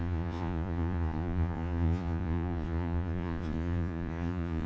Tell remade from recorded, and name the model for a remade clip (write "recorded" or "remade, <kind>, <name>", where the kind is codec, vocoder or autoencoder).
remade, vocoder, Vocos